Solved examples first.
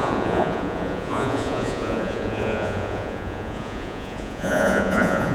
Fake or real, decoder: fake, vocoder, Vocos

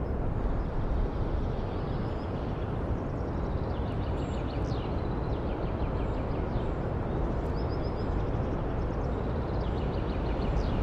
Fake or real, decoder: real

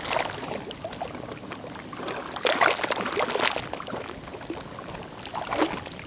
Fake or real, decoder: real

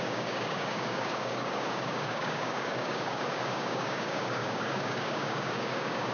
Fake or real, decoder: fake, codec, DAC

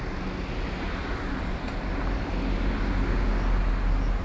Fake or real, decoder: real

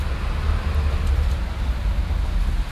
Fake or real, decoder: real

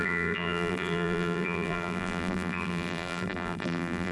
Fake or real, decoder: fake, vocoder, BigVGAN v2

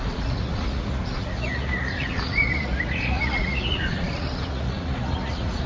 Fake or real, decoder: fake, vocoder, Vocos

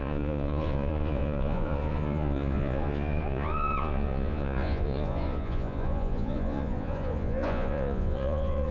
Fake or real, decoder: fake, vocoder, Vocos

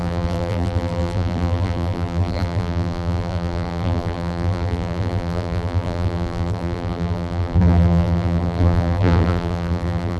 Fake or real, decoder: fake, vocoder, BigVGAN v2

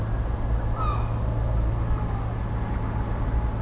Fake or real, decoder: real